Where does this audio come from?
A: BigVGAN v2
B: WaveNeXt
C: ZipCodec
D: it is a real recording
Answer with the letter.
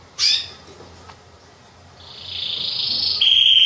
D